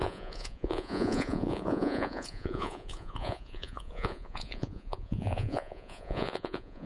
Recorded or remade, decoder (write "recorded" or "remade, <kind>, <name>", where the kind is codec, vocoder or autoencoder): remade, vocoder, Vocos